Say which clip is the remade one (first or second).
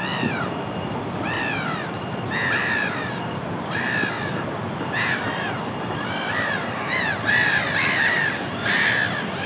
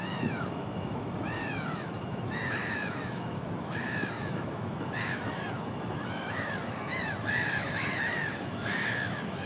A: second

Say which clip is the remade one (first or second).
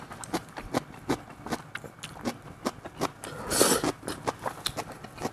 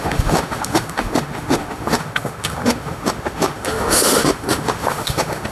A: second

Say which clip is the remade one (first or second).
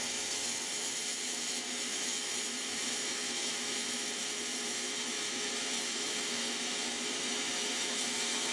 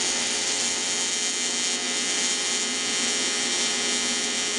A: first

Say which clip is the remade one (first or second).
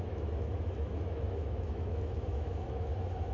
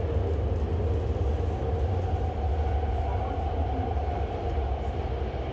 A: first